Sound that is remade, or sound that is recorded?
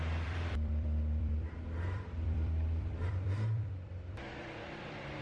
remade